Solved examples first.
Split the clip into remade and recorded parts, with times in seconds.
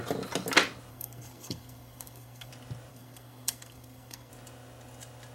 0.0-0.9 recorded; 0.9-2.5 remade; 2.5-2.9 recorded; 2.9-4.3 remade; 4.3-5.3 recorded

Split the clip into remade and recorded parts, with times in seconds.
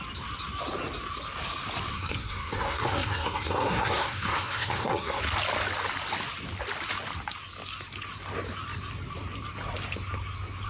0.0-1.9 recorded; 1.9-5.2 remade; 5.2-10.7 recorded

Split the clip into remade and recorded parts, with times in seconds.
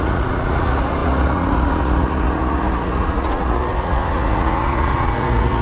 0.0-5.6 remade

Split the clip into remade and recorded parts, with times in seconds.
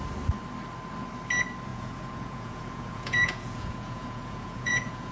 0.0-1.7 recorded; 1.7-5.1 remade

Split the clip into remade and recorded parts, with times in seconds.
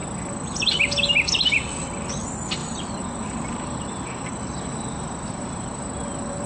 0.0-2.6 recorded; 2.6-6.5 remade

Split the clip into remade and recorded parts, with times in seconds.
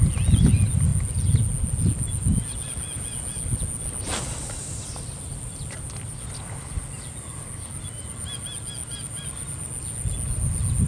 0.0-10.9 recorded